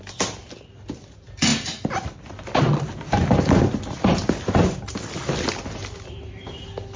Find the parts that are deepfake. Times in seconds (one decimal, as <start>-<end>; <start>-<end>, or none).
none